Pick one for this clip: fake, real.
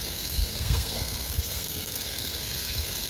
fake